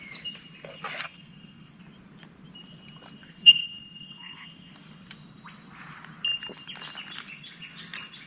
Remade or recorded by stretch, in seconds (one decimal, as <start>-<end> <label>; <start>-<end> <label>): 0.0-1.0 recorded; 1.0-1.8 remade; 1.8-3.2 recorded; 3.2-4.7 remade; 4.7-8.3 recorded